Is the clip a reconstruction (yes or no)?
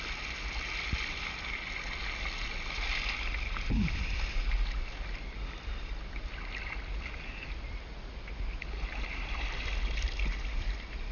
no